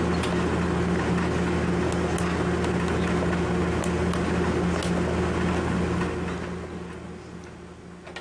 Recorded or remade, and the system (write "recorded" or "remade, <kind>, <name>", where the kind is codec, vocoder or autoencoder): recorded